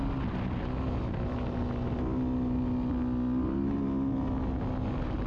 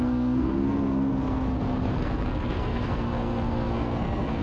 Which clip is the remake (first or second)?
second